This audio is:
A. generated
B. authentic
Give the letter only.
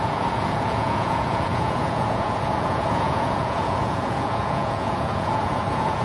A